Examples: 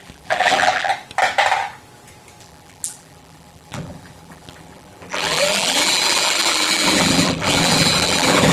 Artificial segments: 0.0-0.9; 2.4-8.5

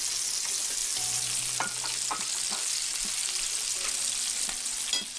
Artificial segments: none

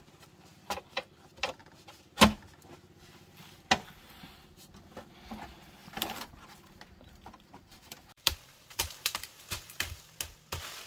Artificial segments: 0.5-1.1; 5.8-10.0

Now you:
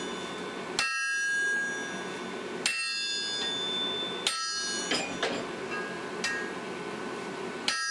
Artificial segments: none

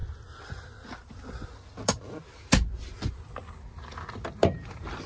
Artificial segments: 4.4-5.1